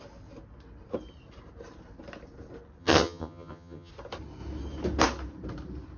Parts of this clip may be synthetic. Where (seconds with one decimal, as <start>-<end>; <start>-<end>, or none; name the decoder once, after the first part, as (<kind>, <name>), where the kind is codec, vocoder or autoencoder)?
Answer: 2.8-3.9 (vocoder, HiFi-GAN)